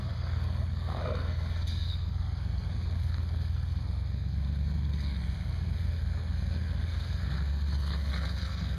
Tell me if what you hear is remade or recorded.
remade